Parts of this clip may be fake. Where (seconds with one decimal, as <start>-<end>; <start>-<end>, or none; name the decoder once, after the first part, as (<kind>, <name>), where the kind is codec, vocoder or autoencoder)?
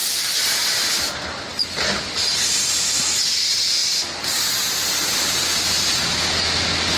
none